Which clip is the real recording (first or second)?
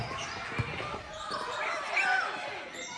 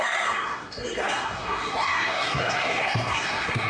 first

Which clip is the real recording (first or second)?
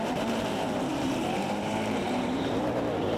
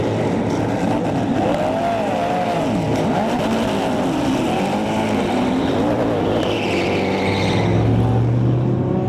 second